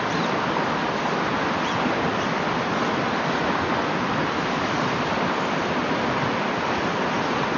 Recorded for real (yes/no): yes